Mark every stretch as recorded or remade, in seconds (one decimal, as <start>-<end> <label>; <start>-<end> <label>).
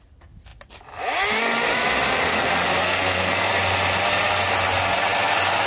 0.0-2.8 recorded; 2.8-3.5 remade; 3.5-5.7 recorded